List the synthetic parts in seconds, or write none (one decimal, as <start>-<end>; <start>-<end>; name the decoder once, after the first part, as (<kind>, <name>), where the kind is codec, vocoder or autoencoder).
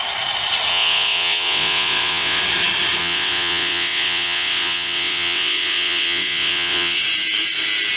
0.7-2.4 (vocoder, WaveNeXt); 3.0-7.0